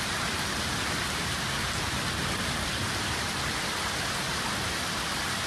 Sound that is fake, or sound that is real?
real